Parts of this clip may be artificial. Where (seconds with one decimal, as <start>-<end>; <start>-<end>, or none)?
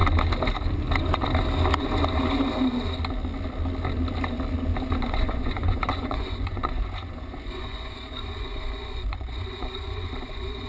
5.0-10.7